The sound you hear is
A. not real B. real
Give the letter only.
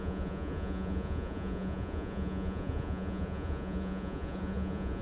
A